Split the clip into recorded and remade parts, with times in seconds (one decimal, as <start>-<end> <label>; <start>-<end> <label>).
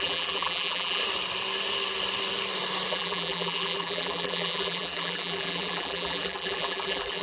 0.0-1.0 remade; 1.0-2.9 recorded; 2.9-7.2 remade